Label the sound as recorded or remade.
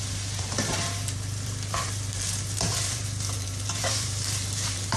remade